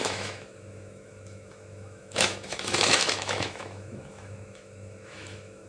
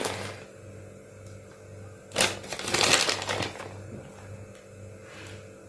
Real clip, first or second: second